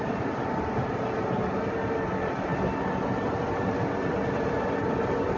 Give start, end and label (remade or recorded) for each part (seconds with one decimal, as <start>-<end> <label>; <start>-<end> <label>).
0.0-5.4 recorded